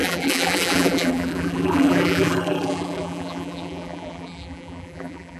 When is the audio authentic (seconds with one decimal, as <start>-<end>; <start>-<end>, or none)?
none